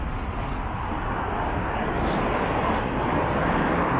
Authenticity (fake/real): real